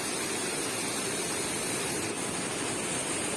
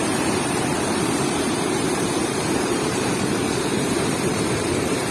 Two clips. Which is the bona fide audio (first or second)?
first